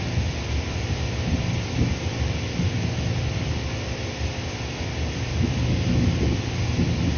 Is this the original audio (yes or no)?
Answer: yes